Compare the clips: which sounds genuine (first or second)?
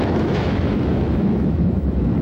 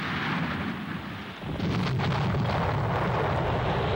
second